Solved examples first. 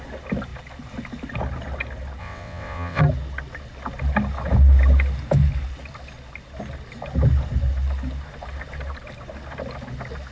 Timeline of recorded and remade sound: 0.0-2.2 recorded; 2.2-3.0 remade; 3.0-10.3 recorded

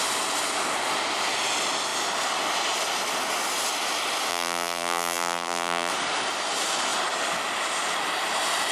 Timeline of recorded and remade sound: 0.0-4.3 recorded; 4.3-5.9 remade; 5.9-8.7 recorded

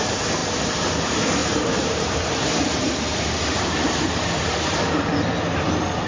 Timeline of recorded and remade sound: 0.0-0.4 recorded; 0.4-0.9 remade; 0.9-1.4 recorded; 1.4-5.1 remade; 5.1-6.1 recorded

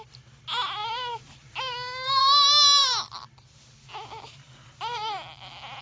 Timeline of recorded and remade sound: 0.0-5.8 recorded

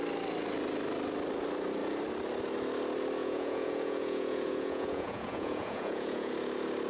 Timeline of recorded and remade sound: 0.0-3.2 recorded; 3.2-6.3 remade; 6.3-6.9 recorded

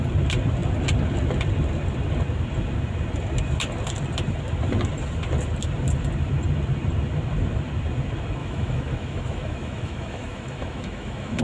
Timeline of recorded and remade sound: 0.0-8.4 recorded; 8.4-11.4 remade